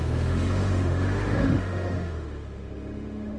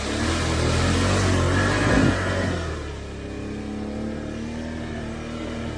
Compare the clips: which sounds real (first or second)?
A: second